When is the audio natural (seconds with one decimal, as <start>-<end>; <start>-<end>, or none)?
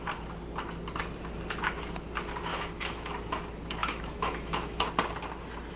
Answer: 0.0-2.5; 3.1-3.8; 4.8-5.8